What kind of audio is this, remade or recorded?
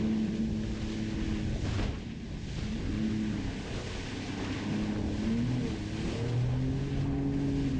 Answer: recorded